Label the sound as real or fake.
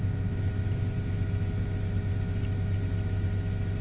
real